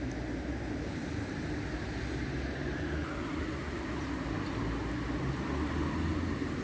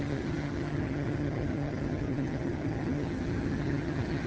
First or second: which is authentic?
first